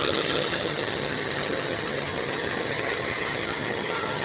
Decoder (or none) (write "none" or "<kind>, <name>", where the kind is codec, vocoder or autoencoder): vocoder, HiFi-GAN